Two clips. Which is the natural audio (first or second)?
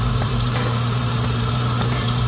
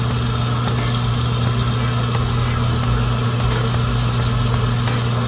second